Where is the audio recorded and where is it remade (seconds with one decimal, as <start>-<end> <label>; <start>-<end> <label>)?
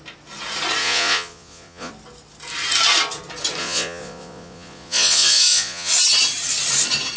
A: 0.0-0.8 recorded; 0.8-1.9 remade; 1.9-3.6 recorded; 3.6-5.9 remade; 5.9-7.2 recorded